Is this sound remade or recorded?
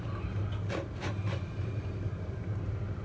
recorded